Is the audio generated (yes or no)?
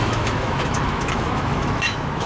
yes